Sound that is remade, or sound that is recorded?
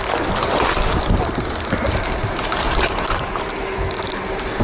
recorded